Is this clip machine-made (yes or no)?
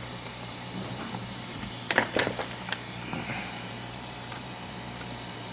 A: yes